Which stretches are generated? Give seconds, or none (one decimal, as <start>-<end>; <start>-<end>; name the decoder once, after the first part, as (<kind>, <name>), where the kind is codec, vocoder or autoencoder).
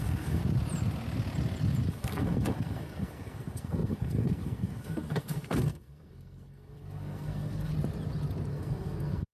0.0-0.4 (codec, SNAC); 1.9-7.7; 8.5-9.3